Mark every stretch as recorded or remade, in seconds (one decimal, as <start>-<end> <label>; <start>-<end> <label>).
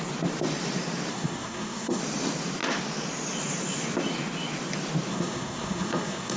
0.0-1.1 recorded; 1.1-2.0 remade; 2.0-5.1 recorded; 5.1-6.4 remade